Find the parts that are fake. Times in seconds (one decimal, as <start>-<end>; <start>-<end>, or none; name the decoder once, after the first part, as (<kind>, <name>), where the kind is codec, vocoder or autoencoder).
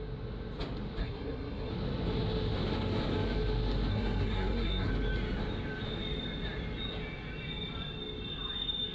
1.0-1.7 (codec, SNAC); 3.9-4.9